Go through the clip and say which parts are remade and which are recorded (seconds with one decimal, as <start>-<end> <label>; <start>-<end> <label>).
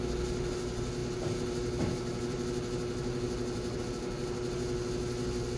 0.0-5.6 recorded